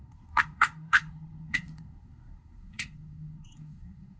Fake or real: fake